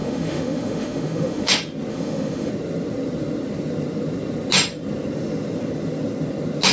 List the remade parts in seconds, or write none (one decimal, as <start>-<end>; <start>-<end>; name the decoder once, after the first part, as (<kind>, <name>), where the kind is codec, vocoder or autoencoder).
0.0-1.5 (autoencoder, DAC-VAE); 1.9-2.5